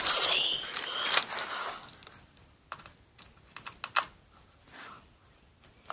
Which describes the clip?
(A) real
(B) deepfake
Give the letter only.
A